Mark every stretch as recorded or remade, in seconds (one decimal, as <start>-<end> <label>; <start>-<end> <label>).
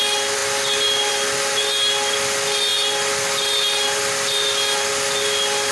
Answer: 0.0-5.7 recorded